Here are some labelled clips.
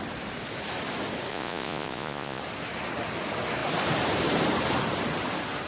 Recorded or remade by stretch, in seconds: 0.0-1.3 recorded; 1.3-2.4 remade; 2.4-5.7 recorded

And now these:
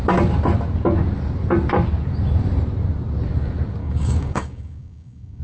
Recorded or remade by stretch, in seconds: 0.0-3.8 recorded; 3.8-5.4 remade

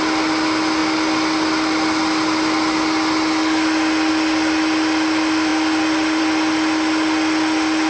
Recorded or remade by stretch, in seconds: 0.0-7.9 recorded

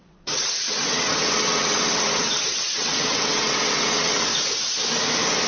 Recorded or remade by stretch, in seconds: 0.0-4.3 remade; 4.3-5.5 recorded

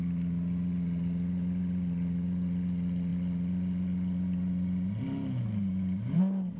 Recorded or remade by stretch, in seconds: 0.0-6.6 recorded

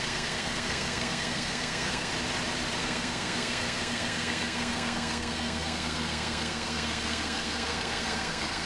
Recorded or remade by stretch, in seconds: 0.0-2.1 remade; 2.1-2.8 recorded; 2.8-8.7 remade

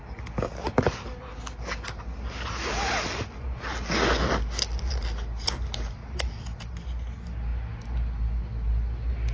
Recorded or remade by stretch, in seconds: 0.0-9.3 recorded

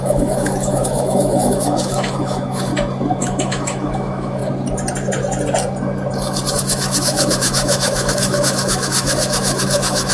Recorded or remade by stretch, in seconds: 0.0-2.7 remade; 2.7-3.2 recorded; 3.2-4.4 remade; 4.4-6.5 recorded; 6.5-10.1 remade